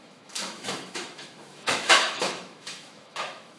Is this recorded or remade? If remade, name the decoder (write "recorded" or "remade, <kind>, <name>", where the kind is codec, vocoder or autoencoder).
remade, autoencoder, DAC-VAE